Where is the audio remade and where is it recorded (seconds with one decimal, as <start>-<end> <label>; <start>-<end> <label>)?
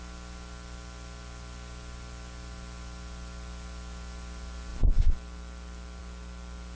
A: 0.0-6.7 recorded